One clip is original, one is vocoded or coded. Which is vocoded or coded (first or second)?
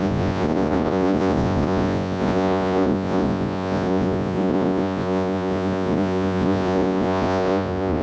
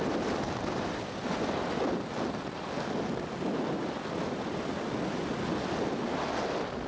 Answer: first